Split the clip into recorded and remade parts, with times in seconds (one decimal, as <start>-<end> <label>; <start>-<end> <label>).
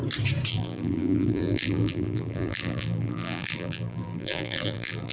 0.0-0.5 recorded; 0.5-5.1 remade